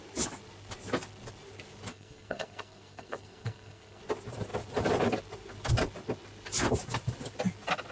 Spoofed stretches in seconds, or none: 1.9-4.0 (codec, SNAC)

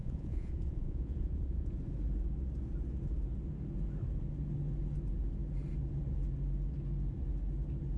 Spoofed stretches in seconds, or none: 0.0-1.7 (vocoder, Vocos)

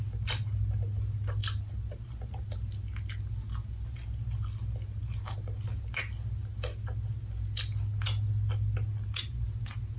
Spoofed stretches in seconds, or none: none

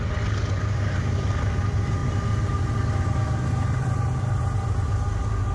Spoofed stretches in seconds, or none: none

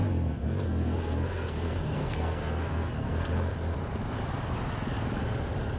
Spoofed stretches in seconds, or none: 0.0-3.5 (codec, SNAC)

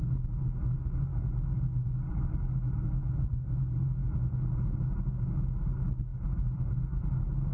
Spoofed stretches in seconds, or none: none